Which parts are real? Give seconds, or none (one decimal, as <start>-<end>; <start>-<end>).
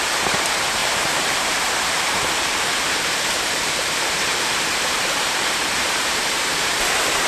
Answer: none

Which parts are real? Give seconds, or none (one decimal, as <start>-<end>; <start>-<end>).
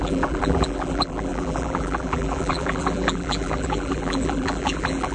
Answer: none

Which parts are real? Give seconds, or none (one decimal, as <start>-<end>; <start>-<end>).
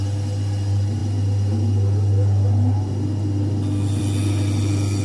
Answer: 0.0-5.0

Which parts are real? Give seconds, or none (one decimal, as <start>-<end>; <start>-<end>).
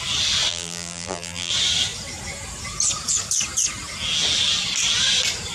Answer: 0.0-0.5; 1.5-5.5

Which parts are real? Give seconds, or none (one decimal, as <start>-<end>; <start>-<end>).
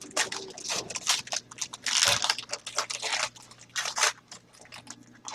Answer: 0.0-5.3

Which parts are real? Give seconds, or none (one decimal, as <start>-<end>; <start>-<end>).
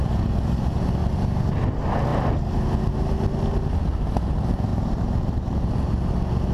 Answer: 0.0-4.7; 5.7-6.5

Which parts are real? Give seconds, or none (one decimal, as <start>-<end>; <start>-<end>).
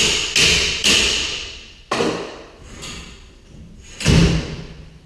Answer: 0.0-0.8; 2.7-5.1